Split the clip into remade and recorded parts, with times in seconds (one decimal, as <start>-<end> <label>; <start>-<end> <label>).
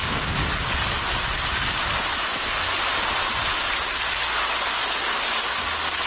0.0-6.1 recorded